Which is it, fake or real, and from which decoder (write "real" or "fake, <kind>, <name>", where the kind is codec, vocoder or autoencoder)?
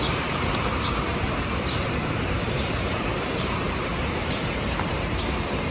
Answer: fake, vocoder, BigVGAN v2